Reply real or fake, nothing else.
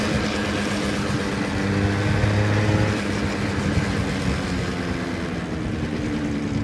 real